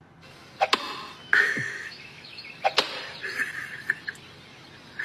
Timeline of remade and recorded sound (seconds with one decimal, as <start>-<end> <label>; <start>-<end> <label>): 0.0-1.3 recorded; 1.3-2.4 remade; 2.4-5.0 recorded